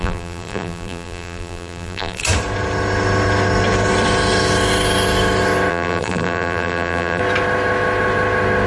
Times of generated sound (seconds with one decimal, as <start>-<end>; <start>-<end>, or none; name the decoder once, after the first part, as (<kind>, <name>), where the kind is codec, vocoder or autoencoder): 0.0-2.2 (vocoder, BigVGAN v2); 5.7-7.2